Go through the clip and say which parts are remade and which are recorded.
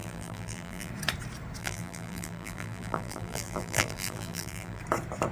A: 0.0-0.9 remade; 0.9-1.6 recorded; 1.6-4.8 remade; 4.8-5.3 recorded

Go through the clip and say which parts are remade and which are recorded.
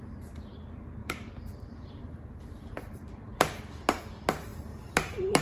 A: 0.0-1.0 recorded; 1.0-4.0 remade; 4.0-4.5 recorded; 4.5-5.4 remade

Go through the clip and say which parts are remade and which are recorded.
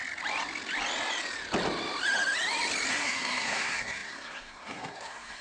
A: 0.0-2.9 recorded; 2.9-5.4 remade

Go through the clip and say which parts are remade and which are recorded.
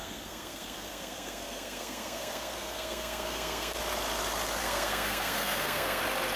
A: 0.0-3.8 remade; 3.8-4.6 recorded; 4.6-6.0 remade; 6.0-6.4 recorded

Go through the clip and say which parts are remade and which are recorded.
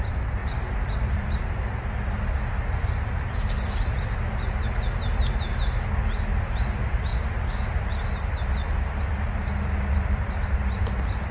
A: 0.0-0.4 recorded; 0.4-1.4 remade; 1.4-11.3 recorded